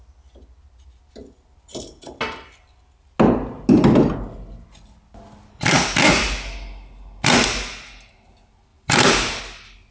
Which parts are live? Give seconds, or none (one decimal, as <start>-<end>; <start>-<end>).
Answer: 0.0-8.7; 9.4-9.9